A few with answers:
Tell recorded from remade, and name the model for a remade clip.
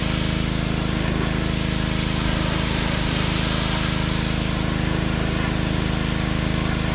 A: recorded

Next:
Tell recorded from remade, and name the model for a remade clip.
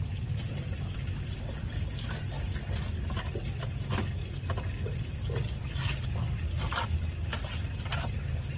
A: recorded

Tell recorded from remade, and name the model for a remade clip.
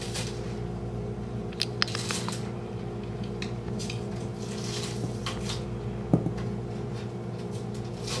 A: recorded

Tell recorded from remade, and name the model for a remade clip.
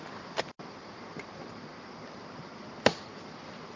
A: remade, vocoder, BigVGAN v2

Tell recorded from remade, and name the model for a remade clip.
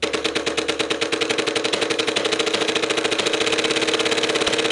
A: recorded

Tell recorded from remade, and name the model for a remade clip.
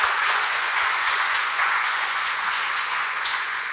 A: remade, vocoder, Vocos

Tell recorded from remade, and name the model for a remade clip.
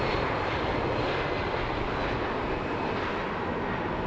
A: recorded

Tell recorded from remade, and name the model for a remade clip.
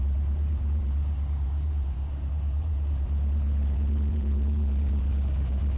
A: remade, vocoder, BigVGAN v2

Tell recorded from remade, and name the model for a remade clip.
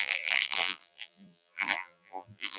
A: remade, vocoder, BigVGAN v2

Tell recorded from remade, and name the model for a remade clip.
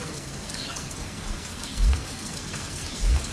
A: remade, codec, SNAC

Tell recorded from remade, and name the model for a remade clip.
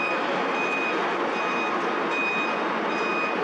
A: recorded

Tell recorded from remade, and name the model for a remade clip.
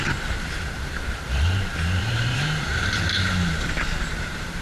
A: remade, vocoder, BigVGAN v2